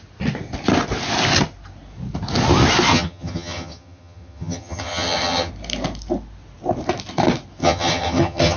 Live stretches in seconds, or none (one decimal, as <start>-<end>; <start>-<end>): 0.0-2.9; 5.5-7.6